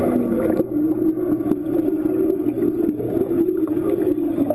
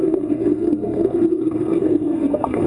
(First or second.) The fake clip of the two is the second